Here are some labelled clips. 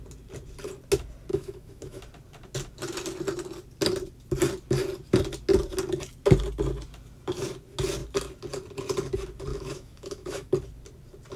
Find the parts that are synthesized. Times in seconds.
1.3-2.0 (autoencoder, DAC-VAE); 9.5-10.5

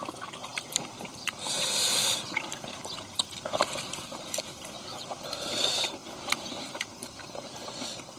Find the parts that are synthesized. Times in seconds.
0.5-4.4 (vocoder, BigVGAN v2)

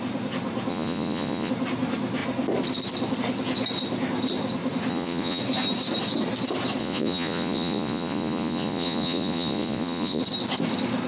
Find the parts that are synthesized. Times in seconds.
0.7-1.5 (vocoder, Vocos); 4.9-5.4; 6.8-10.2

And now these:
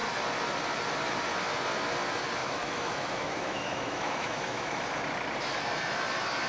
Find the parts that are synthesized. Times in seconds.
2.4-4.8 (autoencoder, DAC-VAE)

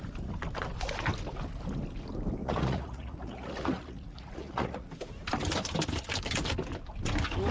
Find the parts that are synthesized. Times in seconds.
2.4-4.9 (vocoder, Vocos)

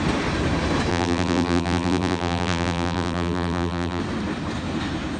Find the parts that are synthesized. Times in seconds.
0.9-4.0 (vocoder, BigVGAN v2)

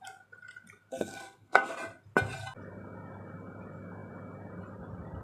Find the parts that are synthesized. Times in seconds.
0.9-1.7 (codec, SNAC)

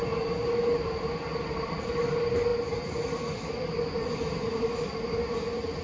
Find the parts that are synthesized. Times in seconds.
none